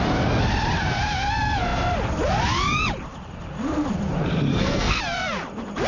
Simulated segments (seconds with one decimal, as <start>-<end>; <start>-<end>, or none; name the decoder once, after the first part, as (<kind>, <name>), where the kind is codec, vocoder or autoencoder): 4.5-5.0 (codec, SNAC)